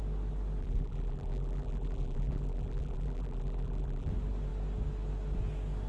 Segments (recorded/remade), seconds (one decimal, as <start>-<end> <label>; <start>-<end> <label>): 0.0-0.6 recorded; 0.6-4.1 remade; 4.1-5.9 recorded